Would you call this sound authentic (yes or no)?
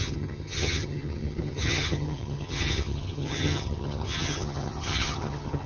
no